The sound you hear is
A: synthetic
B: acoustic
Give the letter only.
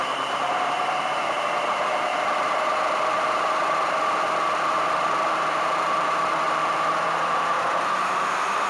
A